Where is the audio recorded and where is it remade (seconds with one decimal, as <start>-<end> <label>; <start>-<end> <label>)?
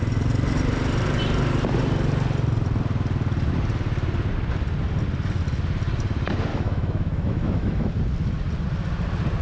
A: 0.0-6.5 recorded; 6.5-7.9 remade; 7.9-9.4 recorded